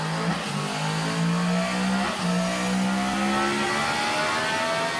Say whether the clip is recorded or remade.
recorded